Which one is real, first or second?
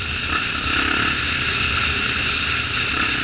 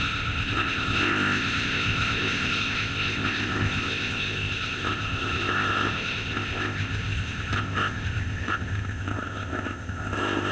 first